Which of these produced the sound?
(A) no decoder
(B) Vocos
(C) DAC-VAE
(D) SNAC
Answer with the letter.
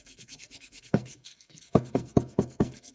D